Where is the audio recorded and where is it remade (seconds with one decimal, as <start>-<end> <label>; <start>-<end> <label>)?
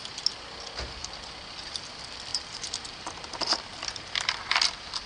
0.0-1.0 recorded; 1.0-1.9 remade; 1.9-2.3 recorded; 2.3-5.1 remade